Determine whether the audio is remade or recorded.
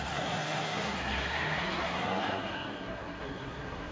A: remade